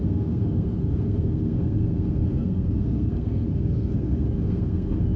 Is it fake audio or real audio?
fake